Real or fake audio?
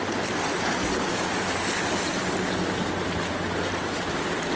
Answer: real